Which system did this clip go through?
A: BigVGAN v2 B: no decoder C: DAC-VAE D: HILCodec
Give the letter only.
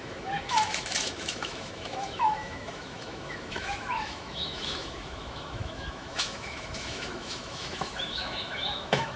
C